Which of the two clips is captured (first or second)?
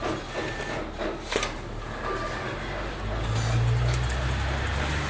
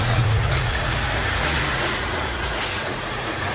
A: first